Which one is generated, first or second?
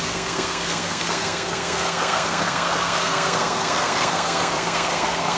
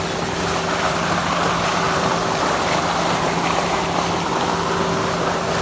first